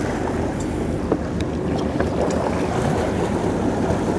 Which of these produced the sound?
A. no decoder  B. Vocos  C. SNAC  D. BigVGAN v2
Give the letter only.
A